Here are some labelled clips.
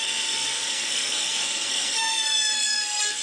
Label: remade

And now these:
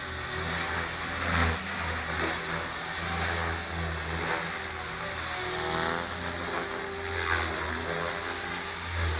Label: recorded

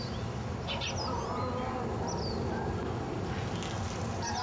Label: recorded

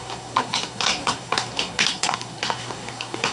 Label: remade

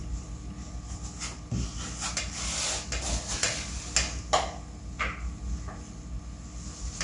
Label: recorded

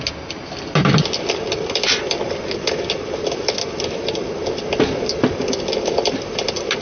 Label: recorded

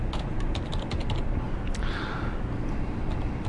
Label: recorded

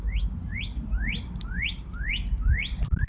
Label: recorded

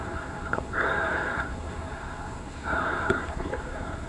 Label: remade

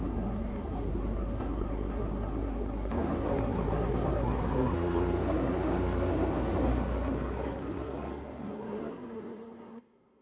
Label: remade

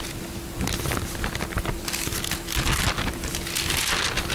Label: recorded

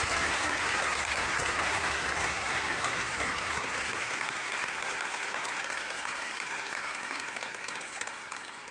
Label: remade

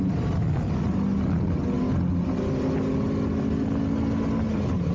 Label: recorded